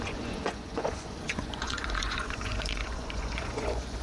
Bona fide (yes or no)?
no